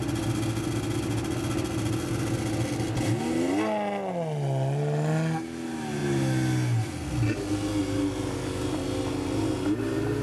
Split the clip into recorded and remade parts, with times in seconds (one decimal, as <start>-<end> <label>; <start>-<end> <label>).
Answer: 0.0-10.2 recorded